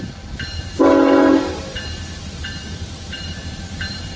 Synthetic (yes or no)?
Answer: yes